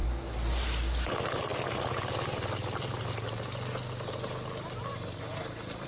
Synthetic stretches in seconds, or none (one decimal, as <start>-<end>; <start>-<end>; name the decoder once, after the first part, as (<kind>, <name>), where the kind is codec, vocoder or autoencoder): 4.9-5.9 (codec, DAC)